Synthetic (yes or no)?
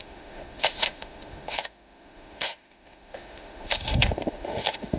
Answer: yes